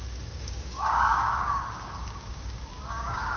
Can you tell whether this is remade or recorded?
remade